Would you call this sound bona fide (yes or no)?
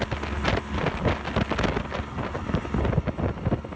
yes